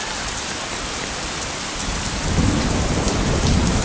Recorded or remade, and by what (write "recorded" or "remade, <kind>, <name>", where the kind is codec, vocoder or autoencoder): remade, vocoder, BigVGAN v2